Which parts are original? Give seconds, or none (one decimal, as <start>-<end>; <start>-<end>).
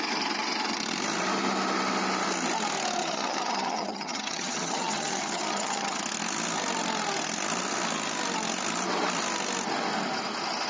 0.0-3.0; 6.0-10.7